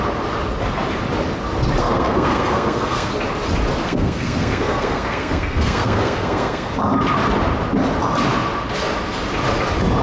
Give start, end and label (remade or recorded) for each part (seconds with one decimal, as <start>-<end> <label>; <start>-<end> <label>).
0.0-1.8 recorded; 1.8-3.1 remade; 3.1-3.8 recorded; 3.8-6.7 remade; 6.7-10.0 recorded